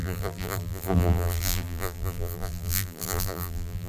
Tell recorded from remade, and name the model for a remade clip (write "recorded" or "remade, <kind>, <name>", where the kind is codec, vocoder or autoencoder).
remade, vocoder, BigVGAN v2